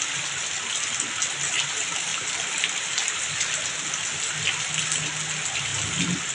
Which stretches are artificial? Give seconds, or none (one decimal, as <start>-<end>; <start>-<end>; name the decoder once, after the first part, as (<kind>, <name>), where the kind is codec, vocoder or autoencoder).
none